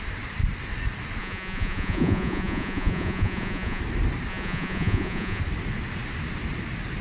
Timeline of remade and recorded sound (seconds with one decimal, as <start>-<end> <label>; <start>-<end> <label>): 0.0-1.2 recorded; 1.2-3.8 remade; 3.8-4.3 recorded; 4.3-5.4 remade; 5.4-7.0 recorded

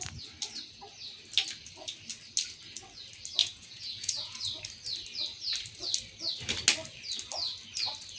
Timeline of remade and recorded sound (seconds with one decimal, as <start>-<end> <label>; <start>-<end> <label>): 0.0-3.4 recorded; 3.4-4.4 remade; 4.4-8.2 recorded

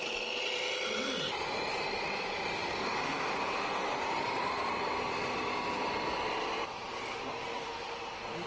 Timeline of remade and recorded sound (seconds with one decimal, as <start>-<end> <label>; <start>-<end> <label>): 0.0-8.5 recorded